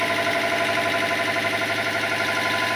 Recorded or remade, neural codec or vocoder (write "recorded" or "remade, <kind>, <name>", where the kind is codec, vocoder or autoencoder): recorded